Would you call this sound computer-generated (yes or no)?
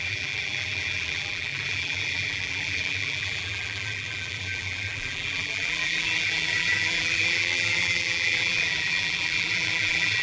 yes